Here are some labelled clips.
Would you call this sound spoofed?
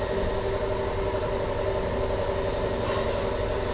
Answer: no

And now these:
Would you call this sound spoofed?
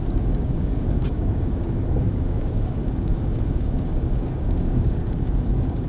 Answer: yes